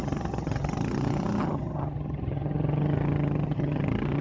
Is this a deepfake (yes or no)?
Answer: yes